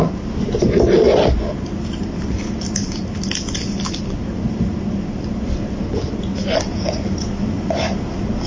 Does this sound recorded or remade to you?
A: recorded